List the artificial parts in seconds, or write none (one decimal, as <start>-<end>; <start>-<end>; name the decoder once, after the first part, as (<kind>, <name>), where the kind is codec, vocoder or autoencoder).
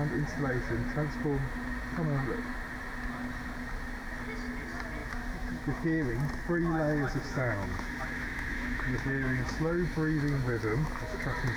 5.0-6.1 (autoencoder, DAC-VAE); 6.6-11.2